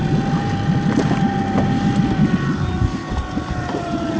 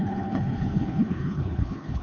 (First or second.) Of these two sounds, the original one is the first